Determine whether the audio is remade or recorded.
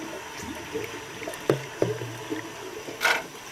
recorded